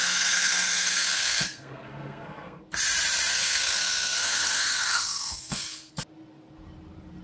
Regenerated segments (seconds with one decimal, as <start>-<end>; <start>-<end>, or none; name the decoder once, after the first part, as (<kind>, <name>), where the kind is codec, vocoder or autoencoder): 0.0-2.6 (codec, SNAC); 3.3-5.9